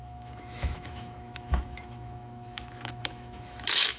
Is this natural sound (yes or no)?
no